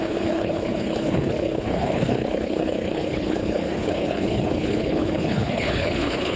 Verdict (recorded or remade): remade